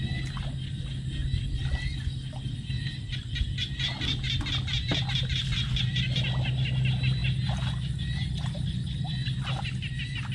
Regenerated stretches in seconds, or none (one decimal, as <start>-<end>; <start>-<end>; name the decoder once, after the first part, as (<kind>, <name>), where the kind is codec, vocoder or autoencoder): none